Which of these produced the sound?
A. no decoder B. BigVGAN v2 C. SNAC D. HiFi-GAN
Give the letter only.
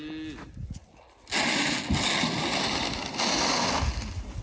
A